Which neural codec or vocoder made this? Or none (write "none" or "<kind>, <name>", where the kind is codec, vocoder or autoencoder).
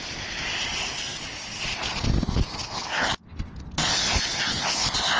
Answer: none